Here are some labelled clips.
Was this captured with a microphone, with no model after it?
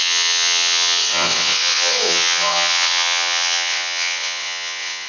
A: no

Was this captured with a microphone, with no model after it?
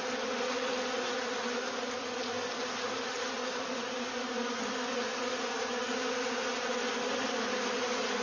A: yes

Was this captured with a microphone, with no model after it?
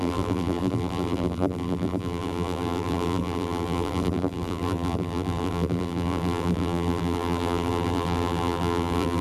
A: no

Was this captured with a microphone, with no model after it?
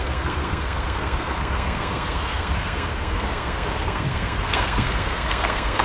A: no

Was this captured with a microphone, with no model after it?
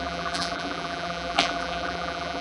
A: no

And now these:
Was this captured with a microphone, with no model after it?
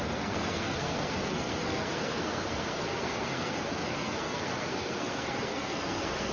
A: no